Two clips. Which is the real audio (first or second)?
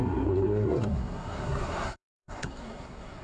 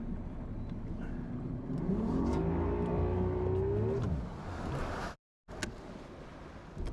second